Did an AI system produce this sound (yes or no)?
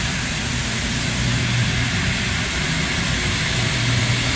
no